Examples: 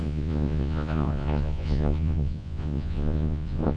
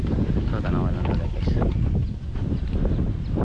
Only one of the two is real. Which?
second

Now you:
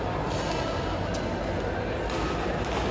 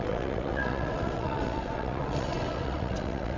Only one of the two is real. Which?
first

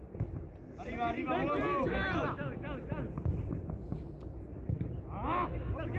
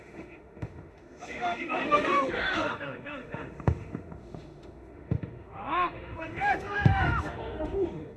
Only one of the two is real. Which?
first